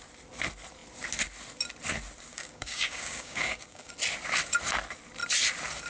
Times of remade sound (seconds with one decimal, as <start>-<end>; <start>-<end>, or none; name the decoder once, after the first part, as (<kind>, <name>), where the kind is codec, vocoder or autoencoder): 2.3-3.9 (codec, DAC)

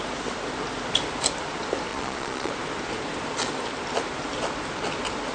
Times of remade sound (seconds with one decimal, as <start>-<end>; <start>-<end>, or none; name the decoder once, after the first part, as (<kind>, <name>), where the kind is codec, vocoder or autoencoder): 1.9-2.5 (vocoder, Vocos)

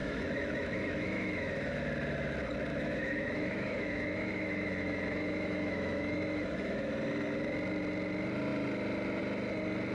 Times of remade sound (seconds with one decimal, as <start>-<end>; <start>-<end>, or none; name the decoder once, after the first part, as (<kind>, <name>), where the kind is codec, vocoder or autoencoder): 0.0-1.8 (autoencoder, DAC-VAE); 2.7-6.9

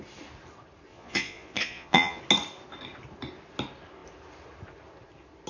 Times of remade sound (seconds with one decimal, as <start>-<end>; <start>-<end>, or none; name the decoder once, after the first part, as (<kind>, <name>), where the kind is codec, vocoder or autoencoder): 0.9-2.2 (vocoder, Vocos)

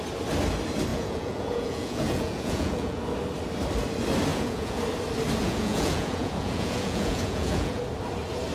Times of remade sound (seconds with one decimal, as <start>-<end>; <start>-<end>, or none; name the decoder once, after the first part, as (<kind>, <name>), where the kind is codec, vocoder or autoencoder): 0.9-3.0 (vocoder, Vocos); 4.3-4.8; 5.4-7.8

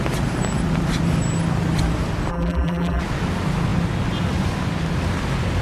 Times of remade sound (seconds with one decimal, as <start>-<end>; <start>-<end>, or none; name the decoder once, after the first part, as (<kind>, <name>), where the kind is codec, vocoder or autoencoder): 2.3-3.0 (vocoder, BigVGAN v2)